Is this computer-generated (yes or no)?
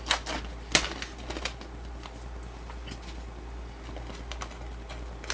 no